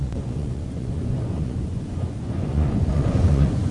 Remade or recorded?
remade